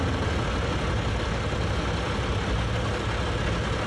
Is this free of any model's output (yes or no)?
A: yes